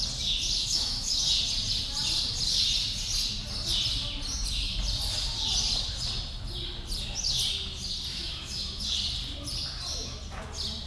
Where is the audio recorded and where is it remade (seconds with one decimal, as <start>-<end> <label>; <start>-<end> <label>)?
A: 0.0-0.6 recorded; 0.6-1.2 remade; 1.2-8.1 recorded; 8.1-8.8 remade; 8.8-10.9 recorded